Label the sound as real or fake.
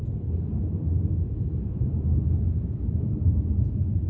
real